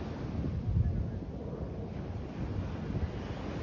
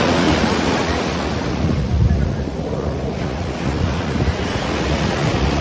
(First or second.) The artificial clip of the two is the second